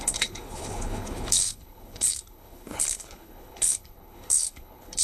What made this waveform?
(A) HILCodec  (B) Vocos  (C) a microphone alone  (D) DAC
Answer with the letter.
A